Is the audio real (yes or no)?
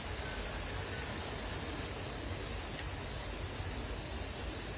yes